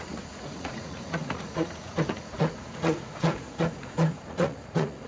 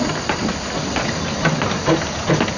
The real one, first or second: second